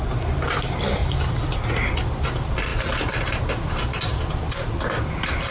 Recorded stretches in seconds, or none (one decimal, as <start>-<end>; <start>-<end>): 1.0-1.9; 2.7-3.5